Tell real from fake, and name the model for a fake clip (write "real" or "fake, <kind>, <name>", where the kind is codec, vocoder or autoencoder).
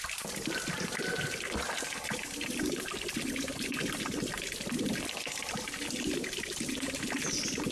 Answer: real